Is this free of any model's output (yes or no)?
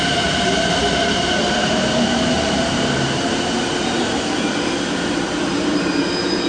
no